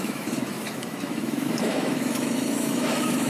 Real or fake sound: fake